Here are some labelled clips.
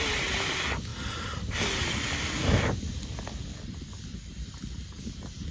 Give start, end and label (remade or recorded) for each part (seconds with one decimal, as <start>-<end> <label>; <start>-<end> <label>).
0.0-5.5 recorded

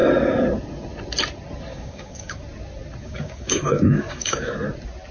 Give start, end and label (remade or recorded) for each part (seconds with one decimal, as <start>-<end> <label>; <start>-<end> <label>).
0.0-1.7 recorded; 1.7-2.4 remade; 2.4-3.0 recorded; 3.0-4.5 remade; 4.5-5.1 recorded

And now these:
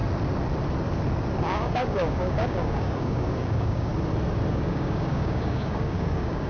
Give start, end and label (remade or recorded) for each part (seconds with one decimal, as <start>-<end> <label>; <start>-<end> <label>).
0.0-1.4 recorded; 1.4-3.9 remade; 3.9-4.5 recorded; 4.5-6.5 remade